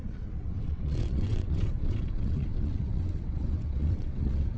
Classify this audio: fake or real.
fake